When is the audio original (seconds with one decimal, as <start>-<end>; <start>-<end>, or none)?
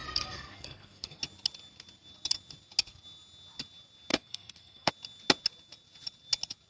1.2-4.1; 4.9-6.7